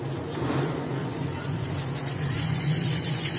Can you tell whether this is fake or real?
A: fake